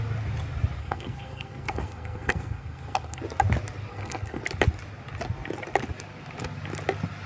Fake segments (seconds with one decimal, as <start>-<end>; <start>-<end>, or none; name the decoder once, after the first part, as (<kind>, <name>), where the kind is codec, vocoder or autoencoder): 0.8-3.2 (codec, SNAC); 3.9-4.4